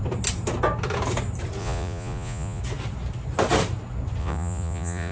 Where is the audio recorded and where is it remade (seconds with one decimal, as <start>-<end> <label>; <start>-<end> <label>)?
0.0-1.6 recorded; 1.6-2.6 remade; 2.6-4.2 recorded; 4.2-5.1 remade